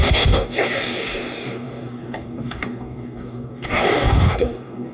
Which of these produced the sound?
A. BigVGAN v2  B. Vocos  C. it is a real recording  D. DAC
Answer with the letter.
D